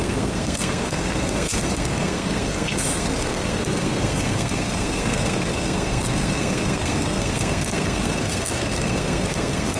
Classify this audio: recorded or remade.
remade